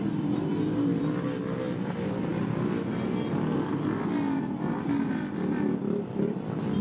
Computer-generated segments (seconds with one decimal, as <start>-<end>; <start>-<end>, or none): none